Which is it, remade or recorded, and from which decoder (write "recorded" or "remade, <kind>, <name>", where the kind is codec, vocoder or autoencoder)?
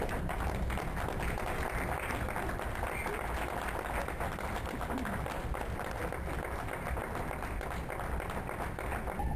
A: recorded